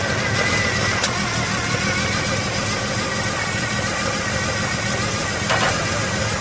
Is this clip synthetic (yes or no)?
no